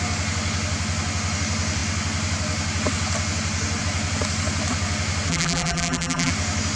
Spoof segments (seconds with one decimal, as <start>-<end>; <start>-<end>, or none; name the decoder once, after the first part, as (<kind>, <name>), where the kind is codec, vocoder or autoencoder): 5.3-6.3 (vocoder, BigVGAN v2)

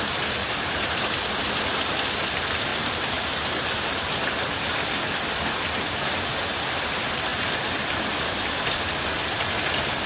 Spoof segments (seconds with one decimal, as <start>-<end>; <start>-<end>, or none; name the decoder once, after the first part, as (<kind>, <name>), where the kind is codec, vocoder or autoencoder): 0.4-1.1 (vocoder, BigVGAN v2); 2.7-4.1

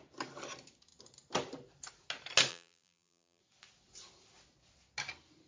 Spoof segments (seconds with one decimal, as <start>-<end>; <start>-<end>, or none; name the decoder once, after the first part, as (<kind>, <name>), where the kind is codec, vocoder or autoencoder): 2.5-3.4 (vocoder, BigVGAN v2)

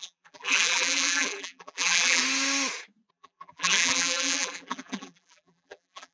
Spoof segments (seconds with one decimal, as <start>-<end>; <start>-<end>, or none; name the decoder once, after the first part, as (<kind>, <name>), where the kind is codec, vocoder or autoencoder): 0.0-2.2 (vocoder, BigVGAN v2); 3.1-6.1

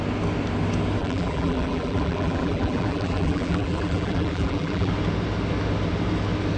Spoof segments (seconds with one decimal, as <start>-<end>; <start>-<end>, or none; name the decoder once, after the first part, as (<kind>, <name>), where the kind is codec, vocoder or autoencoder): 1.0-4.9 (vocoder, BigVGAN v2)

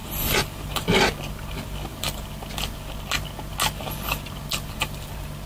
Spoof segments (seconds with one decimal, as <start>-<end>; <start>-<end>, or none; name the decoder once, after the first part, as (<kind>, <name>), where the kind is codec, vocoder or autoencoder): 0.0-1.3 (vocoder, BigVGAN v2); 1.9-2.7